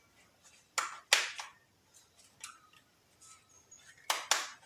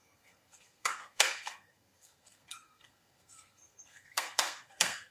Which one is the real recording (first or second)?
first